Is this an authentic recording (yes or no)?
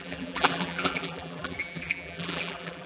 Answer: no